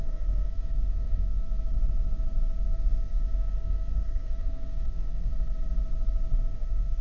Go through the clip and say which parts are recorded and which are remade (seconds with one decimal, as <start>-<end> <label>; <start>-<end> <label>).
0.0-1.5 remade; 1.5-2.7 recorded; 2.7-5.3 remade; 5.3-6.4 recorded; 6.4-7.0 remade